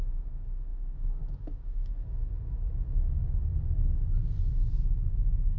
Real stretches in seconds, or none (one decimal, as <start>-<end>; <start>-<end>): 3.5-5.6